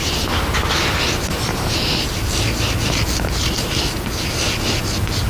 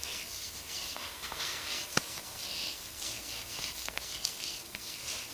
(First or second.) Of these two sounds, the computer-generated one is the second